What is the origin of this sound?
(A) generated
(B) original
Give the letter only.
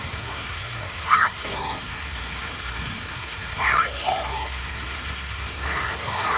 A